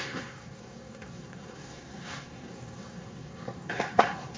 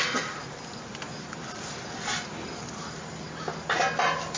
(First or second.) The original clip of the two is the second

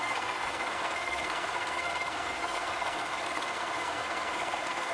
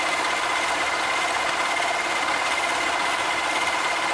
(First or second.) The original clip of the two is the second